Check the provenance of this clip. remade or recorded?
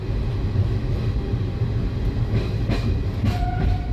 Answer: recorded